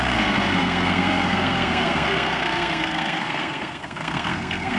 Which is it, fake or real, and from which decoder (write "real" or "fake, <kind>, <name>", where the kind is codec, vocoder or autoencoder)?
fake, codec, SNAC